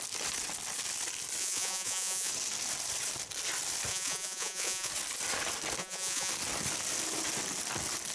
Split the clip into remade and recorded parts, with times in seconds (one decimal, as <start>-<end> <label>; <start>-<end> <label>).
0.0-1.4 recorded; 1.4-2.3 remade; 2.3-3.9 recorded; 3.9-4.9 remade; 4.9-5.8 recorded; 5.8-6.3 remade; 6.3-8.1 recorded